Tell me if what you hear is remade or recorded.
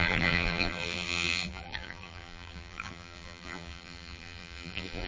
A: remade